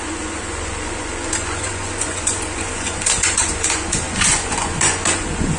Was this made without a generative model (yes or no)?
no